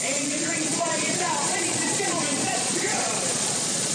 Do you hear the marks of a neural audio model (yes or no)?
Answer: yes